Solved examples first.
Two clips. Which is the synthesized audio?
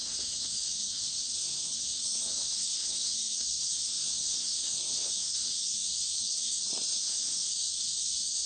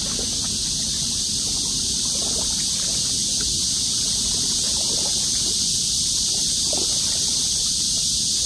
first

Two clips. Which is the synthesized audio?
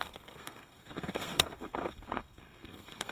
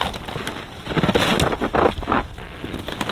first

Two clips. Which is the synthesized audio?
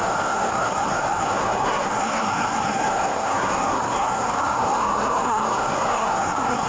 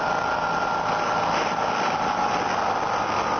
first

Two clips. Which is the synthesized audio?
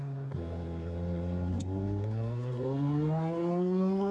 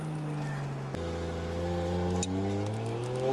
first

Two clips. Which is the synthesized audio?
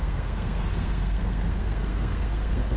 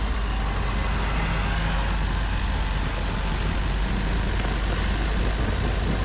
first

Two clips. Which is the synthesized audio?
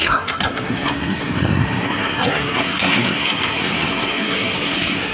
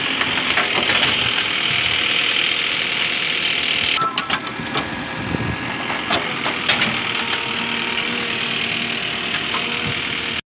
first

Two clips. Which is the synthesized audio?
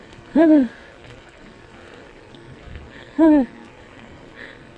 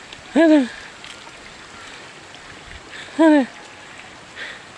first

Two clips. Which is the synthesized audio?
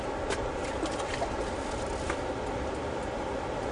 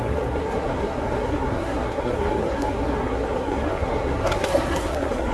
second